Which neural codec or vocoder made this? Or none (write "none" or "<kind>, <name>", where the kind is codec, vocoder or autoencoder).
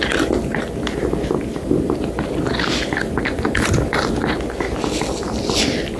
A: none